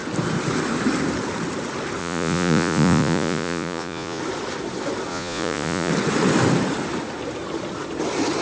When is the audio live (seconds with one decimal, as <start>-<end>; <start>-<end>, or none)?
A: 0.0-2.0; 4.2-5.1; 5.9-8.4